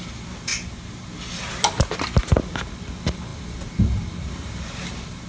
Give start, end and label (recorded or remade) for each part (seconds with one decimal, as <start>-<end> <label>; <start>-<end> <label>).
0.0-5.3 recorded

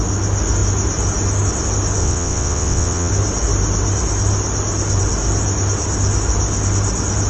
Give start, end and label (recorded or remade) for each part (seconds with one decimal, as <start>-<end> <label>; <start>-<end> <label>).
0.0-2.0 recorded; 2.0-3.1 remade; 3.1-7.3 recorded

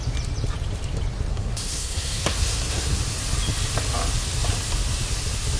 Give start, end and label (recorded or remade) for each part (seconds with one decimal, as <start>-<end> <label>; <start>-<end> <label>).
0.0-1.3 recorded; 1.3-3.0 remade; 3.0-5.6 recorded

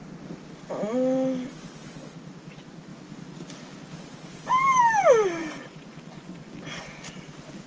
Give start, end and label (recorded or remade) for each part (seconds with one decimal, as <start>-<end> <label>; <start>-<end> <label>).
0.0-5.4 recorded; 5.4-6.5 remade; 6.5-7.7 recorded

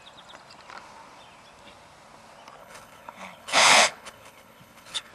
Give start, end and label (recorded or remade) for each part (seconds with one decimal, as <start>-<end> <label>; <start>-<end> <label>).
0.0-2.6 recorded; 2.6-5.1 remade

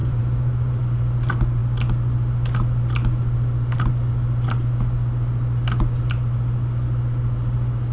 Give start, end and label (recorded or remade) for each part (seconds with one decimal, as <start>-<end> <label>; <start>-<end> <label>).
0.0-0.8 remade; 0.8-7.9 recorded

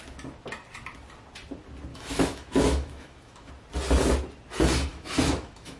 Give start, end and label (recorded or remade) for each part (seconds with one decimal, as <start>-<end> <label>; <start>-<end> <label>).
0.0-1.9 recorded; 1.9-3.5 remade; 3.5-4.9 recorded; 4.9-5.8 remade

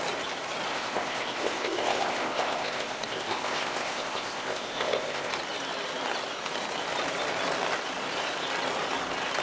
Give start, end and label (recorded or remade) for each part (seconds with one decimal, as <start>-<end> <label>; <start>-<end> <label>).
0.0-0.7 recorded; 0.7-5.3 remade; 5.3-9.4 recorded